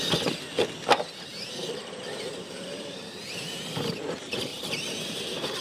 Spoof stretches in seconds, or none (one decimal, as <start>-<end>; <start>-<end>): 1.3-3.2; 4.5-5.0